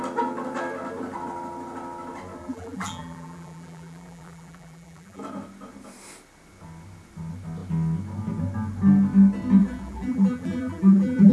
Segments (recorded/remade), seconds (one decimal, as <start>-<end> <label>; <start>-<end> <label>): 0.0-2.4 recorded; 2.4-5.2 remade; 5.2-9.6 recorded; 9.6-11.3 remade